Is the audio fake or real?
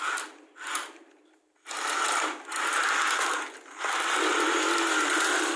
fake